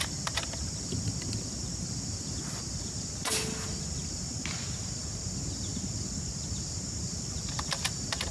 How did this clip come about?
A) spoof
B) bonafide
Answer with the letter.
B